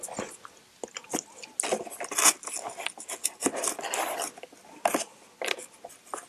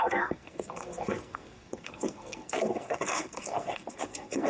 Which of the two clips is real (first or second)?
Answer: first